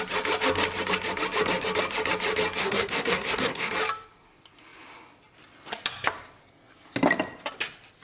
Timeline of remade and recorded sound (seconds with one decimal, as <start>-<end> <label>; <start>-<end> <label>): 0.0-2.6 recorded; 2.6-3.7 remade; 3.7-8.0 recorded